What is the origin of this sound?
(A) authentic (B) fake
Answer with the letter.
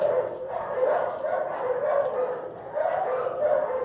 A